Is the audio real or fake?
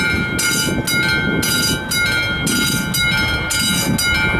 real